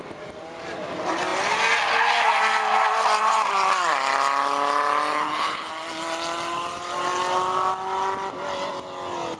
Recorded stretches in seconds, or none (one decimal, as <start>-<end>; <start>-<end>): 0.0-5.1; 5.7-9.4